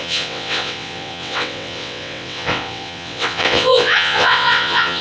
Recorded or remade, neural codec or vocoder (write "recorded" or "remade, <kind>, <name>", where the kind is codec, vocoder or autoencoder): remade, vocoder, WaveNeXt